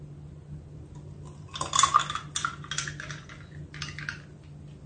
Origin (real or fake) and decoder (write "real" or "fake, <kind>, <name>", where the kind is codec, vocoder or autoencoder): real